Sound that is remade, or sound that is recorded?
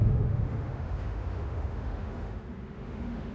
remade